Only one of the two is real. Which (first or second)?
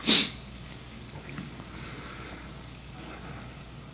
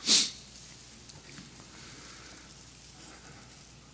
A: second